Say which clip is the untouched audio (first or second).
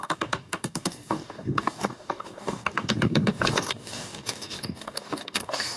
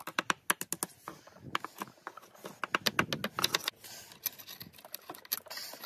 second